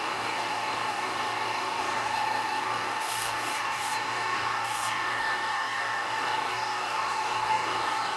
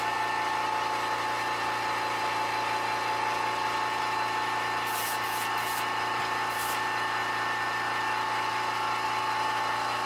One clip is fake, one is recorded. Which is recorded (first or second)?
second